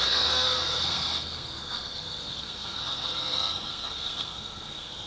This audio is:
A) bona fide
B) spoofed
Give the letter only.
B